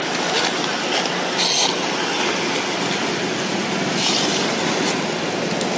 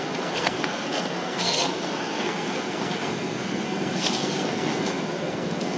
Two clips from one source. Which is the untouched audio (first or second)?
first